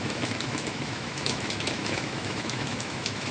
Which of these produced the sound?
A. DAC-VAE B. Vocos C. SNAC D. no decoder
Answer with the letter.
A